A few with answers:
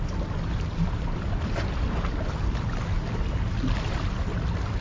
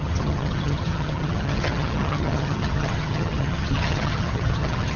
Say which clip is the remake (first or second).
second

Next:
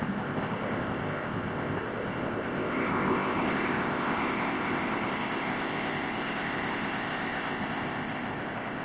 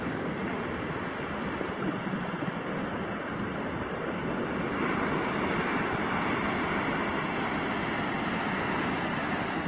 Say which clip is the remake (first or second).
first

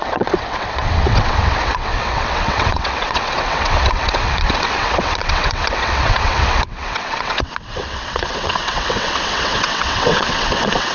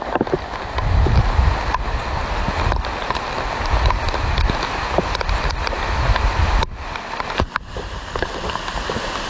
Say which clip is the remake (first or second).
first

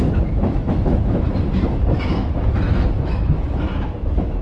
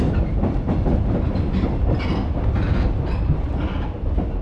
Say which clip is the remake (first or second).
first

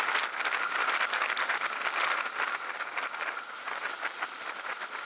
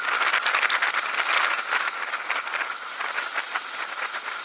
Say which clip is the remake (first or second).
first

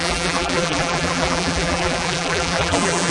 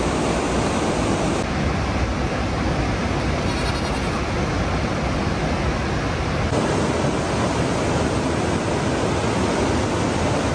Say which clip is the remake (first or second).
first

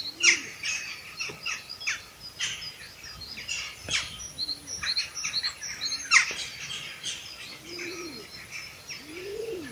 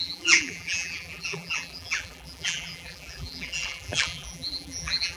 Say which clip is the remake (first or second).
second